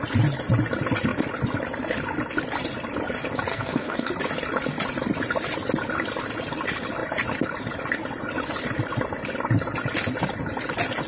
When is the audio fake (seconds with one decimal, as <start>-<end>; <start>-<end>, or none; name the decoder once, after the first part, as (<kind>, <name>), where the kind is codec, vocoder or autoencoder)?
3.5-4.1 (codec, SNAC)